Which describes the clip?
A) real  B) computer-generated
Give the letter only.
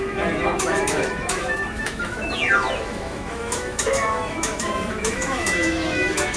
B